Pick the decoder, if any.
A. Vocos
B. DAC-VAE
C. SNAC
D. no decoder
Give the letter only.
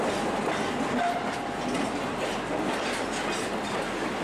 D